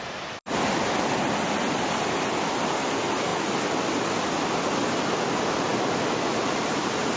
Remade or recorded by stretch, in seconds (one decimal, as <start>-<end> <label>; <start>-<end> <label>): 0.0-7.2 recorded